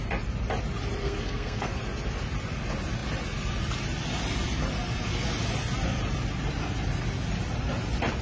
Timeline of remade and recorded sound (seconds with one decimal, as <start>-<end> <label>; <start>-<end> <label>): 0.0-1.0 recorded; 1.0-1.8 remade; 1.8-8.2 recorded